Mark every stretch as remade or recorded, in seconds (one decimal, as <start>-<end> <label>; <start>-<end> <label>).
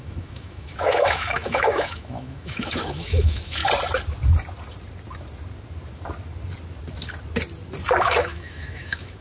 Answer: 0.0-3.6 remade; 3.6-8.0 recorded; 8.0-9.2 remade